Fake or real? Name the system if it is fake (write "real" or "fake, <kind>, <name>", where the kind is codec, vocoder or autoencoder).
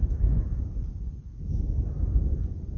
real